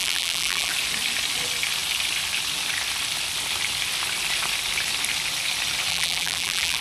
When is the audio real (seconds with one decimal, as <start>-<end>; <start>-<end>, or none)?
0.7-5.9